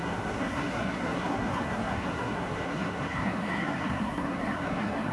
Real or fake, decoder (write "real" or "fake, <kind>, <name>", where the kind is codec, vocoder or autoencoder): fake, codec, SNAC